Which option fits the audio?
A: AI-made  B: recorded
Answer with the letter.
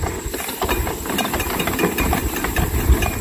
B